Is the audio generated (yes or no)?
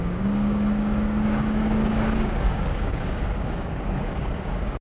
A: yes